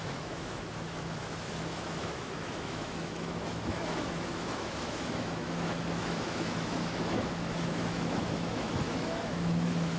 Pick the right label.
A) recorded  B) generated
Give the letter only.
B